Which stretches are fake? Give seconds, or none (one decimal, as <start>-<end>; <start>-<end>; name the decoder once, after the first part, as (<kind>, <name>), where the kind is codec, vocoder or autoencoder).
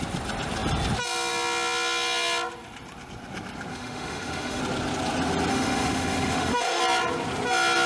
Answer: 3.7-4.6 (autoencoder, DAC-VAE); 5.5-6.8